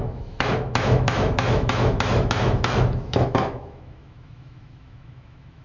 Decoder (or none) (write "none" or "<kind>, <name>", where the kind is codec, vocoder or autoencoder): autoencoder, DAC-VAE